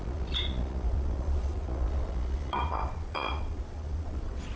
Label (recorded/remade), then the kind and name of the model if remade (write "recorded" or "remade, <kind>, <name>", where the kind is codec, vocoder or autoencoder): remade, vocoder, Vocos